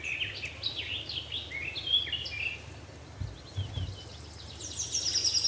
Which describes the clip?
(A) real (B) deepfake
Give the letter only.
A